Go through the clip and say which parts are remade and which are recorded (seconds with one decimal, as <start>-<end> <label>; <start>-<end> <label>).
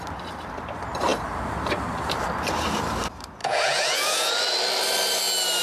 0.0-3.4 recorded; 3.4-4.3 remade; 4.3-5.6 recorded